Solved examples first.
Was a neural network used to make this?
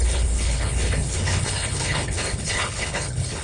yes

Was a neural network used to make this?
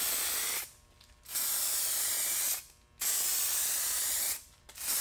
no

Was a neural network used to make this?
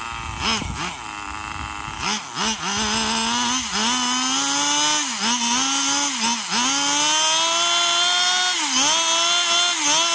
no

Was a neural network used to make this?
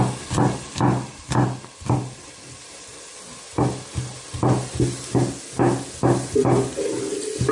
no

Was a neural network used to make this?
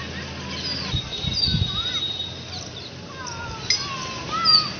no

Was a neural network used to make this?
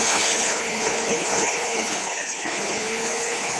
yes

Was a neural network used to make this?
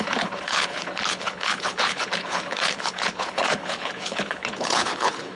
yes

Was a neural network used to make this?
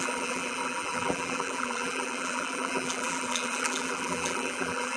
yes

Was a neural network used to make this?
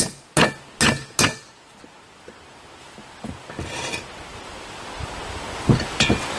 no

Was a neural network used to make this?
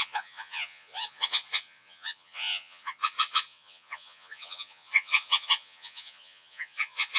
yes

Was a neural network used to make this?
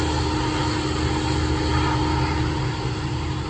no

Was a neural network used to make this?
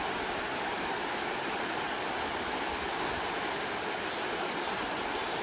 no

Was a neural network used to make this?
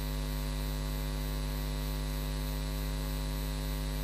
no